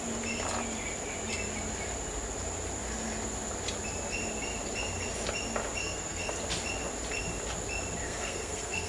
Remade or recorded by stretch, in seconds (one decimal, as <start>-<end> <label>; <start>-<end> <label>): 0.0-5.8 recorded; 5.8-6.3 remade; 6.3-8.0 recorded; 8.0-8.9 remade